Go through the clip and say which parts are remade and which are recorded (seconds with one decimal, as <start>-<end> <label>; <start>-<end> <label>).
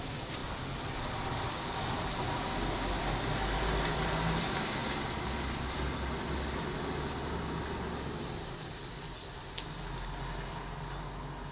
0.0-11.5 recorded